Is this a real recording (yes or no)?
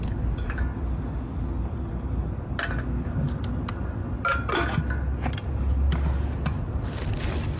yes